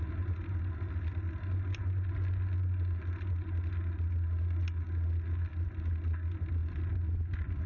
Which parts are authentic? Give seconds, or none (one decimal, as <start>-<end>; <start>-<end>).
0.0-7.7